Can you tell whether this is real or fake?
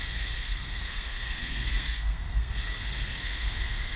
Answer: fake